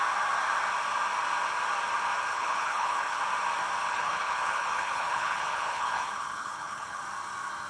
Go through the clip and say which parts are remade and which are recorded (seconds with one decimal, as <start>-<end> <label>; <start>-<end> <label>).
0.0-2.3 recorded; 2.3-3.2 remade; 3.2-3.8 recorded; 3.8-7.0 remade; 7.0-7.7 recorded